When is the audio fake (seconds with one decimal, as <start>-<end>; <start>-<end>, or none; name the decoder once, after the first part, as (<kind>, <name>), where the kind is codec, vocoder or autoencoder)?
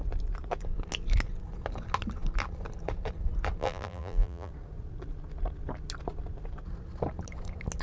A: 3.6-4.5 (vocoder, BigVGAN v2)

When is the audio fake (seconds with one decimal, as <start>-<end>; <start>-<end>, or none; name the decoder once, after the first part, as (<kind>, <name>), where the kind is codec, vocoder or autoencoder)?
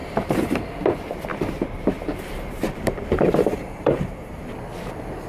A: 0.0-0.6 (vocoder, BigVGAN v2); 1.3-4.5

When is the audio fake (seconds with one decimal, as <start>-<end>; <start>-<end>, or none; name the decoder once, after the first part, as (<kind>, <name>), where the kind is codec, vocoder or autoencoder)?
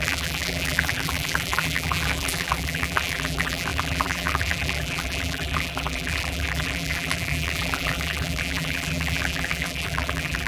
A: 0.0-10.5 (vocoder, BigVGAN v2)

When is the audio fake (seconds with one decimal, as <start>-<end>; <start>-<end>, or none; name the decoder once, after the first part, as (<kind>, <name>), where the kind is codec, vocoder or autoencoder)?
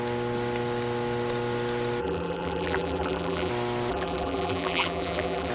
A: 2.0-3.5 (vocoder, BigVGAN v2); 3.9-5.5